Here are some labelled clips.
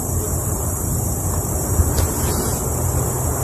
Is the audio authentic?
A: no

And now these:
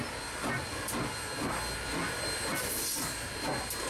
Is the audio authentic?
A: yes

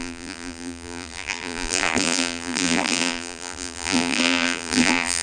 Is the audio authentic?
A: no